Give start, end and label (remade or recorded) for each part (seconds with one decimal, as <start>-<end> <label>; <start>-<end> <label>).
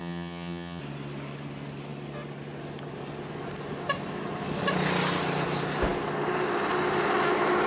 0.0-0.8 remade; 0.8-7.7 recorded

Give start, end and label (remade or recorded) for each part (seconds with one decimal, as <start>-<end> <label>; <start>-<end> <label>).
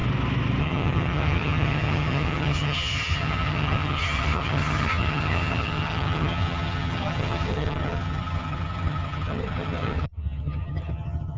0.0-0.6 recorded; 0.6-11.4 remade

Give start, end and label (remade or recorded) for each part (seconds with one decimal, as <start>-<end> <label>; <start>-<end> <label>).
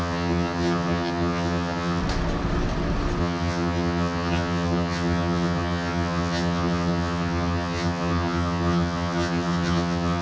0.0-2.0 remade; 2.0-3.2 recorded; 3.2-10.2 remade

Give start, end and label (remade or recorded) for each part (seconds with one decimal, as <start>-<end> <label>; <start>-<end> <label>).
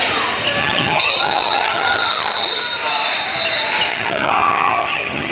0.0-0.6 recorded; 0.6-2.6 remade; 2.6-3.9 recorded; 3.9-5.3 remade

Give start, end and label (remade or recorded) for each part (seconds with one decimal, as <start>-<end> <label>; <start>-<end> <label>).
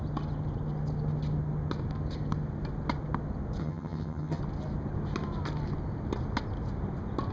0.0-3.6 recorded; 3.6-4.4 remade; 4.4-7.3 recorded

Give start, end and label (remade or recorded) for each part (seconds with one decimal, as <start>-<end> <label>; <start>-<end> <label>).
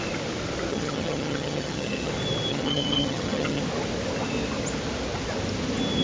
0.0-0.7 recorded; 0.7-2.1 remade; 2.1-2.5 recorded; 2.5-3.6 remade; 3.6-6.0 recorded